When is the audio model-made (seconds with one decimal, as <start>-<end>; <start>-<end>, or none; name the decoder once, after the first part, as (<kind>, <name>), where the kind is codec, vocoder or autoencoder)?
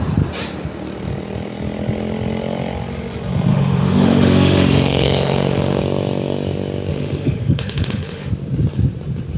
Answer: 3.5-5.8 (autoencoder, DAC-VAE); 6.9-8.3